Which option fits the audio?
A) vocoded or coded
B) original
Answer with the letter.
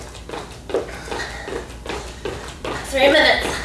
B